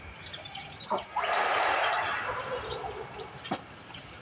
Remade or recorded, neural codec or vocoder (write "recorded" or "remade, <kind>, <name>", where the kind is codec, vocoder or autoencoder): remade, vocoder, BigVGAN v2